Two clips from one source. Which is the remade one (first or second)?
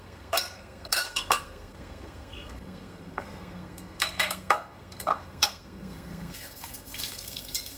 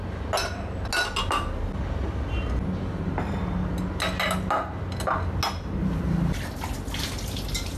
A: first